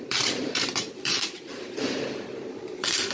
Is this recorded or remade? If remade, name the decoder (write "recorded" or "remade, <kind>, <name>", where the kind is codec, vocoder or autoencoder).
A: remade, vocoder, BigVGAN v2